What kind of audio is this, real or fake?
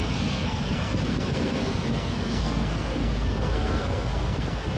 fake